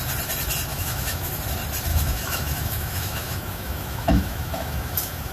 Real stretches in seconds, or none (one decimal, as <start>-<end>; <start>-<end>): 0.0-0.7; 1.4-1.9